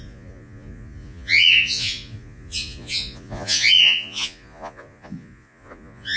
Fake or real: fake